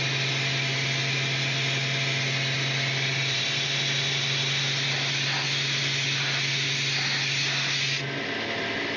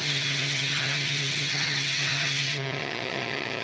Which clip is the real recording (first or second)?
first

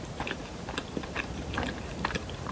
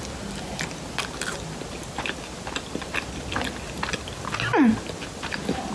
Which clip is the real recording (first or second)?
second